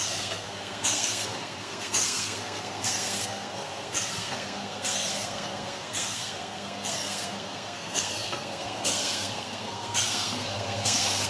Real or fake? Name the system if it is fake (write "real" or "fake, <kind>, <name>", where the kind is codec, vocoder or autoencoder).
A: fake, codec, SNAC